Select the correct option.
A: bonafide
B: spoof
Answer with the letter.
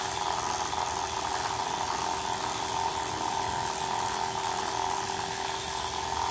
A